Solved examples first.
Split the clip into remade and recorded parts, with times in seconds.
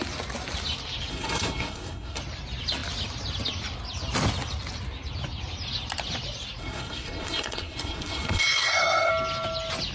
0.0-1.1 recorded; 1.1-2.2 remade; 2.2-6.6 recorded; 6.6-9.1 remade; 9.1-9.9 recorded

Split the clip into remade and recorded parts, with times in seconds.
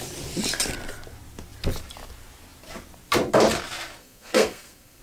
0.0-4.0 recorded; 4.0-5.0 remade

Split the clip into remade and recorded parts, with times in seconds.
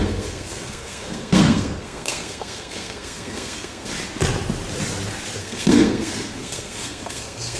0.0-3.9 remade; 3.9-5.4 recorded; 5.4-7.6 remade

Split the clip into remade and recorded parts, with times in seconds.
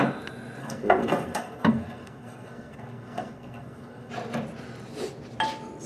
0.0-0.6 recorded; 0.6-4.1 remade; 4.1-5.9 recorded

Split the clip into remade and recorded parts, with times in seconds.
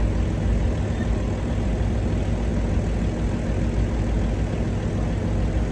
0.0-5.7 recorded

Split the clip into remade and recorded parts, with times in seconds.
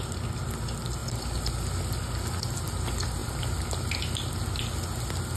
0.0-5.4 recorded